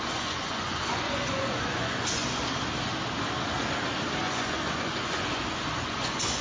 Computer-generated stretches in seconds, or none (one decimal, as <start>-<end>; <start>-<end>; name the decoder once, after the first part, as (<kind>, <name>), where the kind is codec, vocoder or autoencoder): 0.0-2.4 (vocoder, Vocos); 4.2-6.4